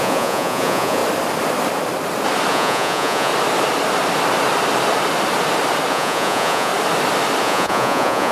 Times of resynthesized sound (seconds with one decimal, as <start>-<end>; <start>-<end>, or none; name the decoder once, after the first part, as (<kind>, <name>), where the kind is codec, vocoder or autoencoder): 0.0-1.0 (vocoder, Vocos); 2.5-3.3; 5.9-6.7; 7.4-8.3